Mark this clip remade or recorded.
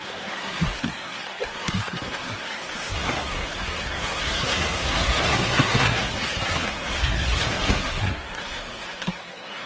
remade